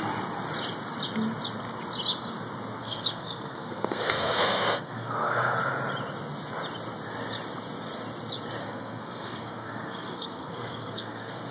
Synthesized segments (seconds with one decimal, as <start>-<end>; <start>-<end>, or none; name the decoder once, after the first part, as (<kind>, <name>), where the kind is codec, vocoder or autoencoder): 2.8-5.6 (codec, SNAC); 8.6-11.5